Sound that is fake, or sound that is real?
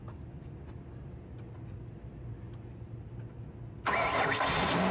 real